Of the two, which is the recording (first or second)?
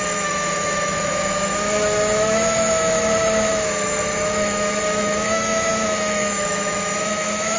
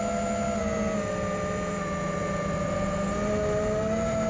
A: second